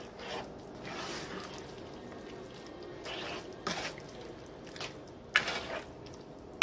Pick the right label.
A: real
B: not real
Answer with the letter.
A